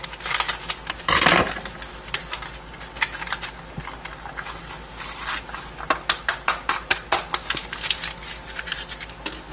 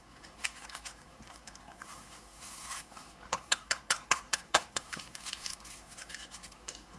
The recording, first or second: first